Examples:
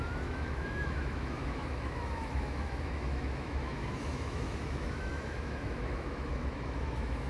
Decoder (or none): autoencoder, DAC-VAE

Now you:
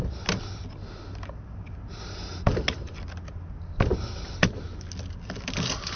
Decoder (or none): none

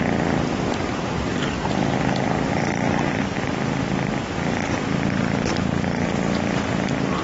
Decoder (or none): none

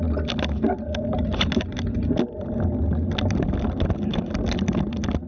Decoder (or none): none